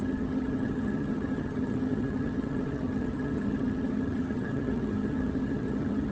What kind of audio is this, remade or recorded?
remade